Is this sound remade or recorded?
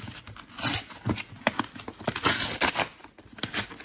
recorded